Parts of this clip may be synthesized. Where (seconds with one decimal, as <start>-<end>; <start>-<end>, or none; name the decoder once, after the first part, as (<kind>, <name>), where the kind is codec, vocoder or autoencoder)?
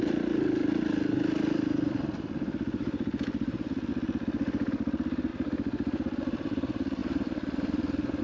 0.0-3.9 (vocoder, BigVGAN v2); 4.7-8.2